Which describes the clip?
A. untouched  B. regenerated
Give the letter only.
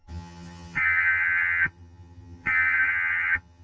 B